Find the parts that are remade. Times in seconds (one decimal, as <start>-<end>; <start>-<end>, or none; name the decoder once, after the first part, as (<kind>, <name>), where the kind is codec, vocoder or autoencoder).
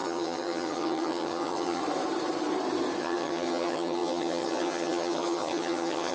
0.0-1.8 (vocoder, HiFi-GAN); 3.0-6.1